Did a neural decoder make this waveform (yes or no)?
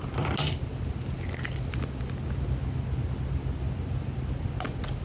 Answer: no